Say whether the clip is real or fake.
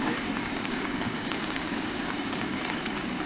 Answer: fake